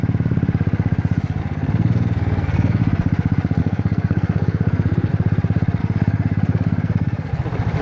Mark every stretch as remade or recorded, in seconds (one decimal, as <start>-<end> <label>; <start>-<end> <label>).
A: 0.0-1.4 recorded; 1.4-2.8 remade; 2.8-3.6 recorded; 3.6-5.1 remade; 5.1-5.8 recorded; 5.8-7.3 remade; 7.3-7.8 recorded